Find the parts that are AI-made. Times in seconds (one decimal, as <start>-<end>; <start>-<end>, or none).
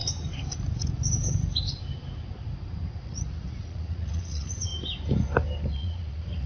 3.0-4.7; 5.7-6.5